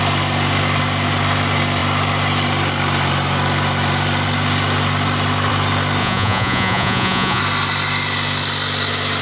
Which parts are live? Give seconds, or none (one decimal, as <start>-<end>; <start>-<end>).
0.0-6.0; 7.4-9.2